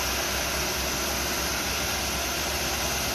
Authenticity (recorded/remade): recorded